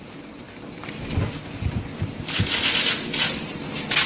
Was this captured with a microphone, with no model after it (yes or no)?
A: yes